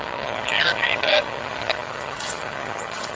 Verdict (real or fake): fake